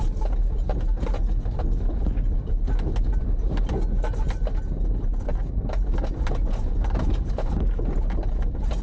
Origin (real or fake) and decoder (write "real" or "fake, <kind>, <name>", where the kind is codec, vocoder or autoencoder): real